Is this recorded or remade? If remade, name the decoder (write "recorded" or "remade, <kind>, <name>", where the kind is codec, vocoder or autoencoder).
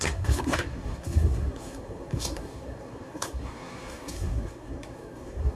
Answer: remade, codec, SNAC